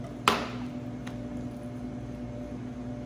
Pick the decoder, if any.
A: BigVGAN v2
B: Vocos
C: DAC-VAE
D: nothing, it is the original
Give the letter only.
D